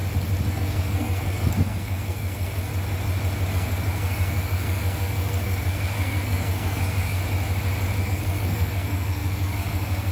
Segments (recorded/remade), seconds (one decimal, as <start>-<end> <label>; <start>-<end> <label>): 0.0-0.5 recorded; 0.5-2.7 remade; 2.7-3.5 recorded; 3.5-7.2 remade; 7.2-8.0 recorded; 8.0-10.1 remade